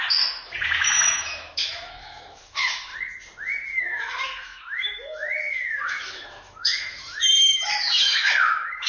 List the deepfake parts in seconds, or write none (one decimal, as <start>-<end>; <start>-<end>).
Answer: 0.0-2.9; 3.8-8.9